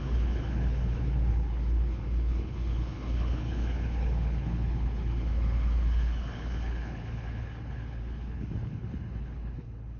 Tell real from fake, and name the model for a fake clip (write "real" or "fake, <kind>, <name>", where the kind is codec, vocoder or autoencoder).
fake, codec, HILCodec